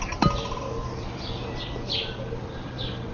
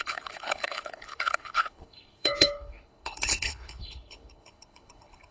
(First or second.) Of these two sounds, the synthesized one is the second